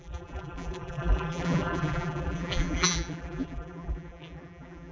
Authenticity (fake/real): fake